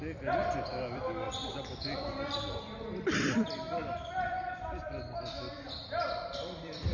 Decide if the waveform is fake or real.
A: fake